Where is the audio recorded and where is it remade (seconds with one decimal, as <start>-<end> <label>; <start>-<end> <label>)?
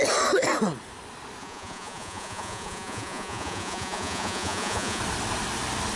0.0-1.4 recorded; 1.4-5.0 remade; 5.0-6.0 recorded